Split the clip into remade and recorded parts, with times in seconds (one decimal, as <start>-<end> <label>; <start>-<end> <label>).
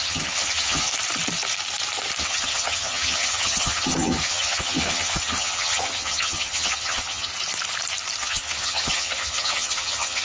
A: 0.0-0.9 remade; 0.9-2.2 recorded; 2.2-7.3 remade; 7.3-8.2 recorded; 8.2-10.2 remade